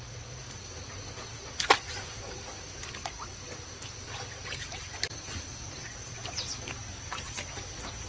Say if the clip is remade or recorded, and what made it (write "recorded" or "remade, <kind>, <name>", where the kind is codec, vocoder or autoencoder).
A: recorded